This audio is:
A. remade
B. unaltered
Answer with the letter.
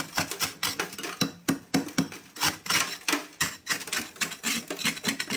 B